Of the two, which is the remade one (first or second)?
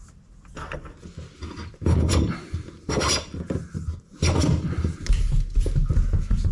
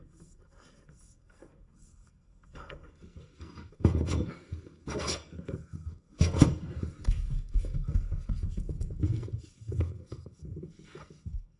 second